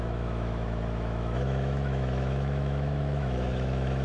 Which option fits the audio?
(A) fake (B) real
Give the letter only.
A